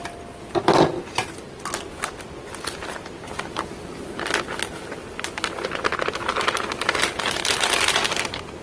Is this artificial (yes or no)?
no